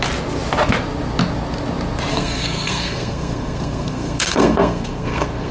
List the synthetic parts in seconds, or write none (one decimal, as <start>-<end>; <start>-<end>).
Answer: 2.1-5.5